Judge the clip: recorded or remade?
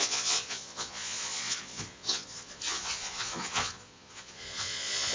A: remade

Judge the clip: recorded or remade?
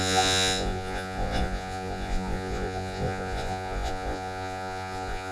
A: remade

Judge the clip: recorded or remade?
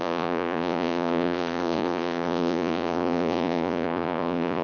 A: remade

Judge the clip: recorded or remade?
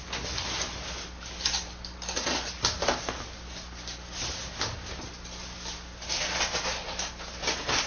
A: recorded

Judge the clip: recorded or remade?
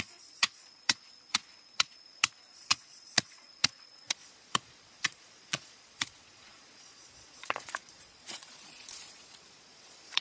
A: remade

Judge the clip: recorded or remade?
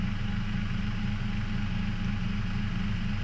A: recorded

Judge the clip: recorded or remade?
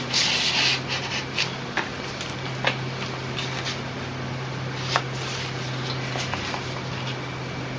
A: recorded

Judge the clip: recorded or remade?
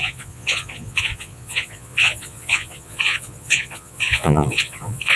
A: remade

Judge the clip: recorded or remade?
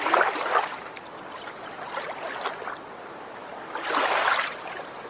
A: recorded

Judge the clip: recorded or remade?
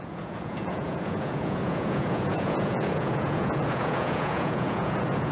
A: remade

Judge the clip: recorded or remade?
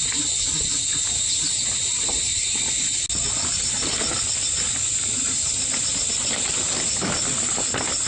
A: recorded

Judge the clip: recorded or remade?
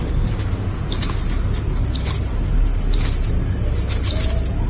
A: recorded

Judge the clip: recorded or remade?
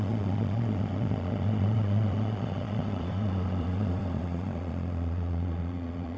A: remade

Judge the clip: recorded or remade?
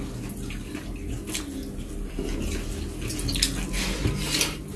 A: recorded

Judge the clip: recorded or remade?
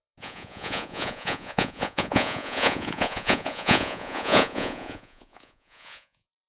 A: remade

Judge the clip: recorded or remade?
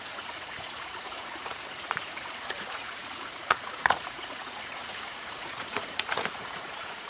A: remade